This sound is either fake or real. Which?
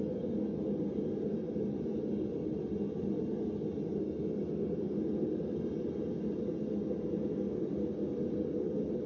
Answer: real